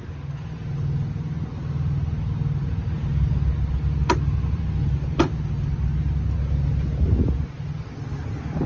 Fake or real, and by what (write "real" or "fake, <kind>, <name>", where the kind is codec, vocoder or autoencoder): real